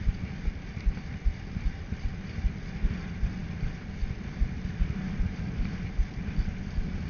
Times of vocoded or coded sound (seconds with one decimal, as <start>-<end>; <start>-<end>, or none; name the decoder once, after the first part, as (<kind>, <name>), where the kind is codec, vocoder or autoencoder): none